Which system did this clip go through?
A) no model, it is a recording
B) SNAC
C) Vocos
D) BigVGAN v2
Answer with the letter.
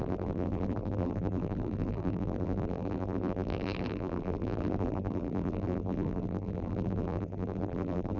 D